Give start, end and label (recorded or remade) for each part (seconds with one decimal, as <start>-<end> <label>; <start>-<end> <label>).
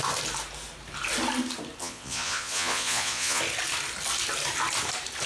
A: 0.0-1.8 recorded; 1.8-3.4 remade; 3.4-5.3 recorded